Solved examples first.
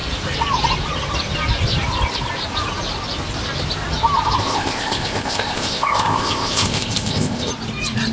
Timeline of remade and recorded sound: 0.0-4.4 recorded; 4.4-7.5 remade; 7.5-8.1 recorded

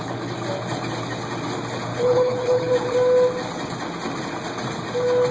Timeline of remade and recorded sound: 0.0-1.9 recorded; 1.9-2.7 remade; 2.7-5.3 recorded

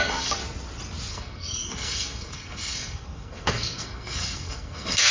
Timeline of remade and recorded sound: 0.0-0.4 remade; 0.4-1.1 recorded; 1.1-5.1 remade

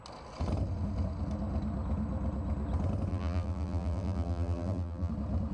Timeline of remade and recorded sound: 0.0-3.1 recorded; 3.1-5.1 remade; 5.1-5.5 recorded

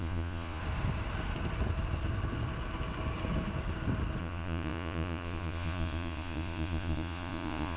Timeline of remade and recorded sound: 0.0-0.6 remade; 0.6-4.2 recorded; 4.2-7.8 remade